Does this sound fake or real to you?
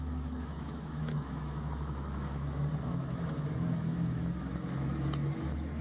fake